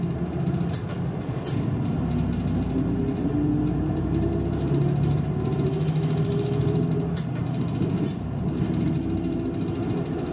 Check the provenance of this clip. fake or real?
real